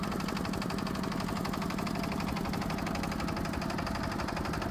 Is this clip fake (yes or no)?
no